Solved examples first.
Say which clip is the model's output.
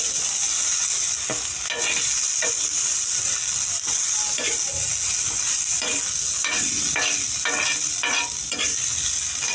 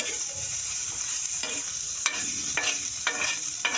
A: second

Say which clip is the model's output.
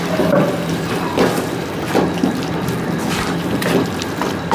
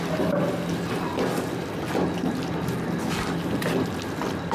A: first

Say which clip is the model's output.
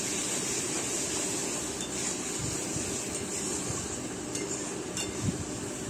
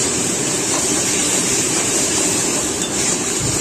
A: second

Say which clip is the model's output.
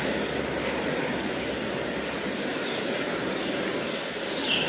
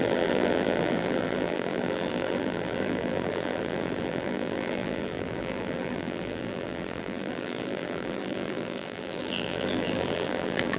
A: second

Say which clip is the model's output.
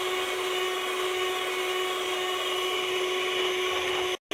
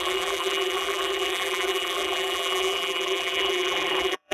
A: second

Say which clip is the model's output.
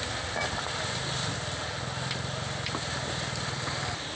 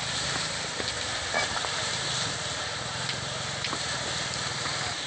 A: second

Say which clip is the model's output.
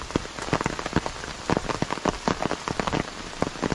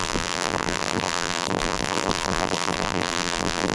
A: second